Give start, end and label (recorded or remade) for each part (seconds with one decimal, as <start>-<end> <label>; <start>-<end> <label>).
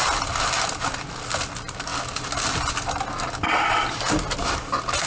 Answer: 0.0-5.1 recorded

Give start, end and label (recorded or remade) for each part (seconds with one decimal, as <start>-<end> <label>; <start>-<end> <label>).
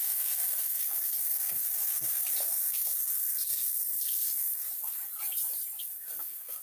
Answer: 0.0-5.0 remade; 5.0-5.8 recorded; 5.8-6.6 remade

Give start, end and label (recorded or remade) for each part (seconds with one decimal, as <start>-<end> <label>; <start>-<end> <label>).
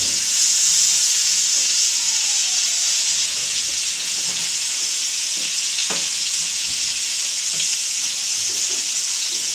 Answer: 0.0-9.5 remade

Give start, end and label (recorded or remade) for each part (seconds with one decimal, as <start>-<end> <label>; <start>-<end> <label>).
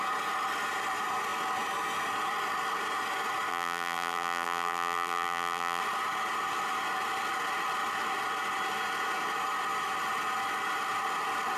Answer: 0.0-3.5 recorded; 3.5-5.8 remade; 5.8-11.6 recorded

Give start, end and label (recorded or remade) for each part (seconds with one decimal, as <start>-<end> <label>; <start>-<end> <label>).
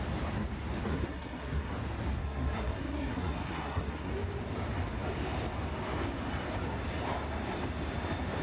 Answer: 0.0-0.9 recorded; 0.9-1.7 remade; 1.7-2.2 recorded; 2.2-4.1 remade; 4.1-8.4 recorded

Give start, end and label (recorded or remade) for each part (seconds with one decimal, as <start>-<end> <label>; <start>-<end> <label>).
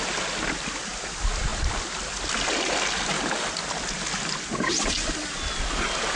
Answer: 0.0-6.2 recorded